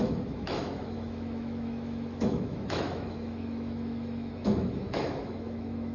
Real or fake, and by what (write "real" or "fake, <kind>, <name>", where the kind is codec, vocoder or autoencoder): fake, autoencoder, DAC-VAE